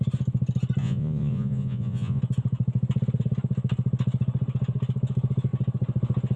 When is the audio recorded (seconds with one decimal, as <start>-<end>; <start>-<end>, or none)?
0.0-0.8; 2.2-6.4